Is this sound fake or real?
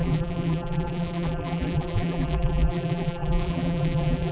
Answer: fake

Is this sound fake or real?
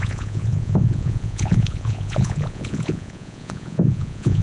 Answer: fake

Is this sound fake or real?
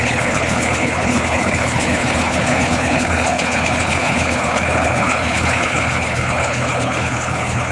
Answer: fake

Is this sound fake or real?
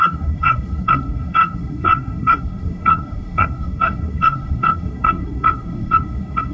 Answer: fake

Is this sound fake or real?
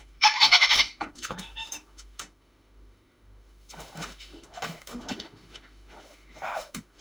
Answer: fake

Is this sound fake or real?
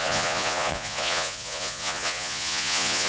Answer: fake